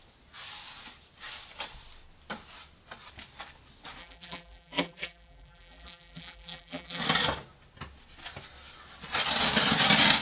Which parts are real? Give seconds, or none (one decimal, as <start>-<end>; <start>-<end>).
0.0-4.0; 7.0-10.2